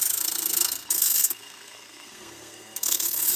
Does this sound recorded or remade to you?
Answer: remade